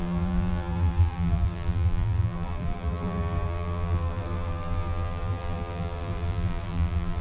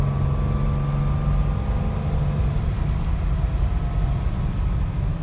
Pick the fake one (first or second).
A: first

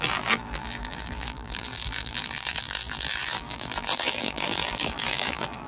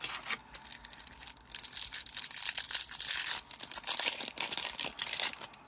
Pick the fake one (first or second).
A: first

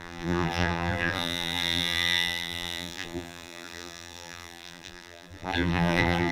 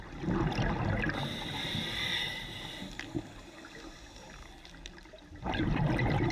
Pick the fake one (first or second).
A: first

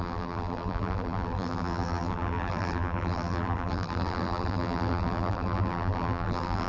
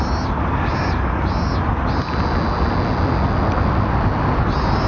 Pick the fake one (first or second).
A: first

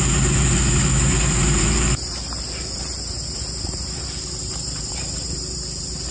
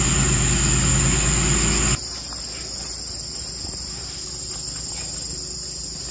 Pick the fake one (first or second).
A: first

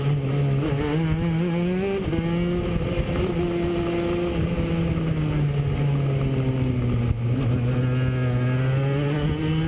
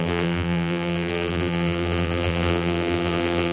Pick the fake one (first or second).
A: second